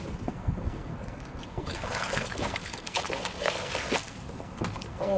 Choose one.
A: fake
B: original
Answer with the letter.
A